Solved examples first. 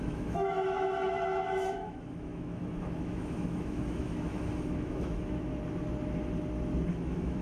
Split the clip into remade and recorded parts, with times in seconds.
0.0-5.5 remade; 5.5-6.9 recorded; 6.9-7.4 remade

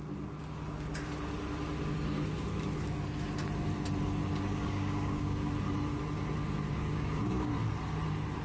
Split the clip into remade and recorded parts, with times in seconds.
0.0-4.3 recorded; 4.3-5.5 remade; 5.5-6.7 recorded; 6.7-7.5 remade; 7.5-8.4 recorded

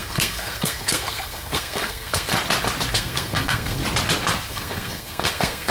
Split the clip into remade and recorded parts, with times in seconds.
0.0-2.3 remade; 2.3-2.9 recorded; 2.9-3.8 remade; 3.8-4.5 recorded; 4.5-5.7 remade

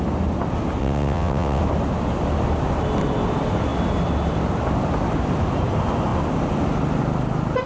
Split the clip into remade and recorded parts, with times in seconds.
0.0-0.8 recorded; 0.8-1.6 remade; 1.6-7.7 recorded

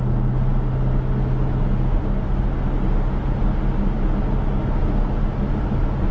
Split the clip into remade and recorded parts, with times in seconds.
0.0-6.1 recorded

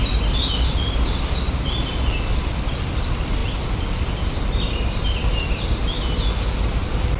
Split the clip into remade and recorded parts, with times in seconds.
0.0-7.2 recorded